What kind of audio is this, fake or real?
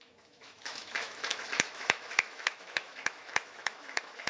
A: fake